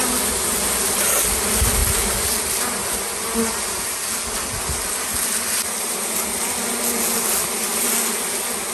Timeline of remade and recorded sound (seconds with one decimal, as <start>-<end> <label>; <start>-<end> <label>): 0.0-8.7 recorded